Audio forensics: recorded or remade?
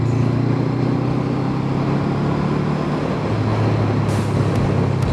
recorded